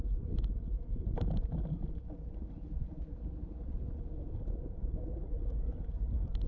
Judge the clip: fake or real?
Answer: real